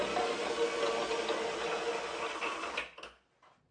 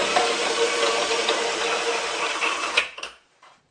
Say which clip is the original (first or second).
first